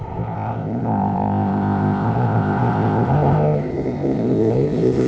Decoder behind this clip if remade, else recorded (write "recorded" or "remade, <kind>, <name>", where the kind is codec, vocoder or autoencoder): remade, codec, ZipCodec